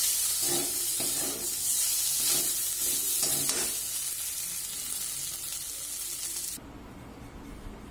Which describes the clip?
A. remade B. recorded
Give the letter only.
B